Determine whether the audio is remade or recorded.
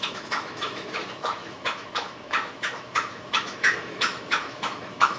remade